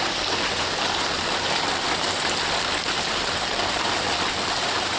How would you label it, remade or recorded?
remade